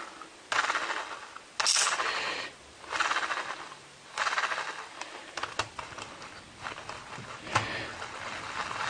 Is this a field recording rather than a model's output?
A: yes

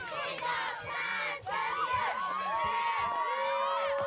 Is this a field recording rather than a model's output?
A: yes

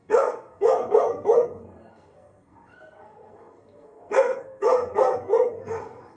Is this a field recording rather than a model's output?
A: no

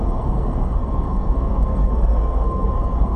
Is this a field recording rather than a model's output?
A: no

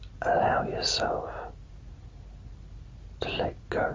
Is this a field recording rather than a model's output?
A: yes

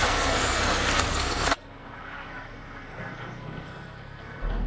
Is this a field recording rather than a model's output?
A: no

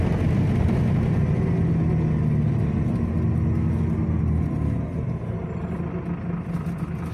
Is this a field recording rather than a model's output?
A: yes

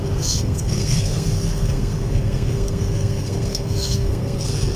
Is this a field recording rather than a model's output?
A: no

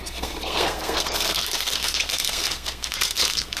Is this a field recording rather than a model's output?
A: no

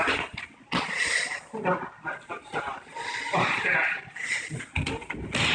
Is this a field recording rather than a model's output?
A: yes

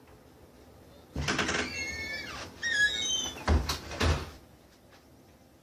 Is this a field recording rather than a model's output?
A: yes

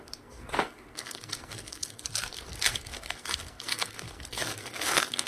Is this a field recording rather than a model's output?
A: no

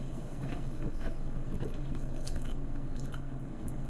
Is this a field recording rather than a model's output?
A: no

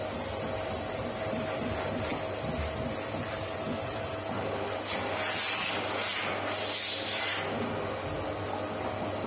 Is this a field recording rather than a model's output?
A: yes